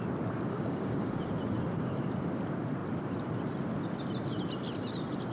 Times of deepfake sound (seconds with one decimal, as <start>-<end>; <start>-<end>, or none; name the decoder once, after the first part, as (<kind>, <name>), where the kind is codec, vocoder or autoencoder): 0.5-1.1 (codec, DAC)